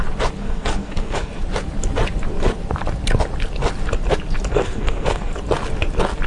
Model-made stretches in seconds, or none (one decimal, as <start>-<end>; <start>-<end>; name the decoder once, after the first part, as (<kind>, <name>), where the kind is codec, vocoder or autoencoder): 0.4-1.4 (codec, SNAC); 4.5-5.3